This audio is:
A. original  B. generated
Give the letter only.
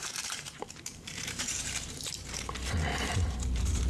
B